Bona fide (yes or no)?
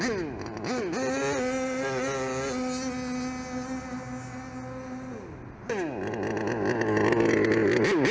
yes